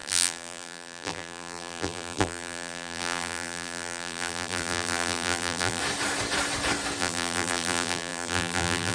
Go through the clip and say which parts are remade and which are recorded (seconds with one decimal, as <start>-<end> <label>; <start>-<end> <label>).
0.0-5.8 remade; 5.8-7.0 recorded; 7.0-8.9 remade